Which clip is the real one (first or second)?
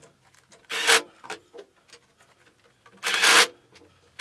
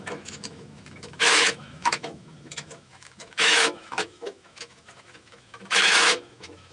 first